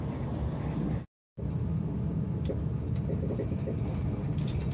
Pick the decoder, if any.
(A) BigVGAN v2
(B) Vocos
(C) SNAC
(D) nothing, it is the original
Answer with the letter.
D